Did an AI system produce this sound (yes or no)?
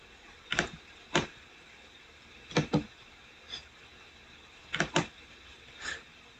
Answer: no